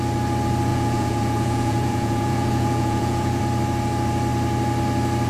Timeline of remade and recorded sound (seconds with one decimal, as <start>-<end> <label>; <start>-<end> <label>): 0.0-0.7 recorded; 0.7-3.4 remade; 3.4-5.3 recorded